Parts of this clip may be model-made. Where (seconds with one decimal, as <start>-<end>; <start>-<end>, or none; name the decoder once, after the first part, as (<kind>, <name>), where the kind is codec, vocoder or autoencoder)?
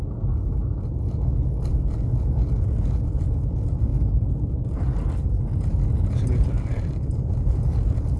3.9-5.4 (vocoder, BigVGAN v2); 6.7-7.7